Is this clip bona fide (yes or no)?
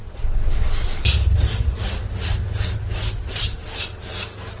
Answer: yes